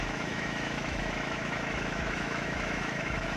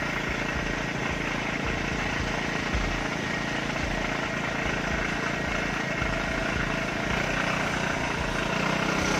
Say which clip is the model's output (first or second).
first